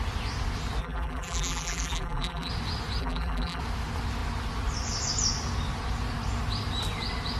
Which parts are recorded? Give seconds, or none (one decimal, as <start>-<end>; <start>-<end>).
0.0-0.8; 2.5-3.0; 3.6-7.4